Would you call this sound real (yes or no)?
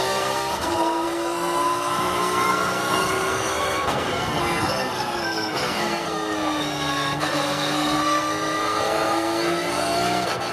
no